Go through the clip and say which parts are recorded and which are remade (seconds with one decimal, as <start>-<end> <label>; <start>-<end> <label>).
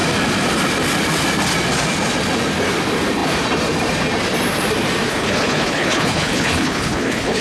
0.0-5.1 recorded; 5.1-7.4 remade